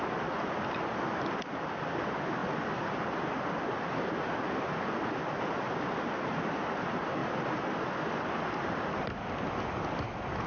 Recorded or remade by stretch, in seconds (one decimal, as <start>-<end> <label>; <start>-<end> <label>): 0.0-10.5 recorded